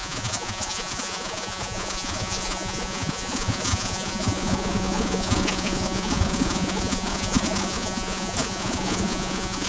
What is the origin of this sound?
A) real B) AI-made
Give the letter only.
B